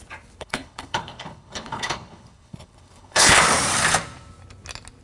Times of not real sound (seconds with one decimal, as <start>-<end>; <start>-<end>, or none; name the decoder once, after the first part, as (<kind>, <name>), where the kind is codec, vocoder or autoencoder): 0.4-3.4 (codec, HILCodec)